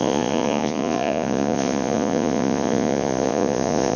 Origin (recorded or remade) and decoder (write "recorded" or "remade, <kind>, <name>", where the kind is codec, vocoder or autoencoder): remade, vocoder, Vocos